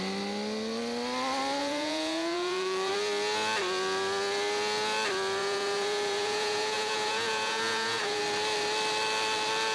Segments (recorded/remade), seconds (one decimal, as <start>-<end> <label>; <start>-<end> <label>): 0.0-1.6 recorded; 1.6-2.9 remade; 2.9-5.4 recorded; 5.4-8.2 remade; 8.2-9.7 recorded